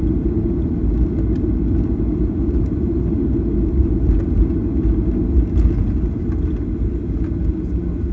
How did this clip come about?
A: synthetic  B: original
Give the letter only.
B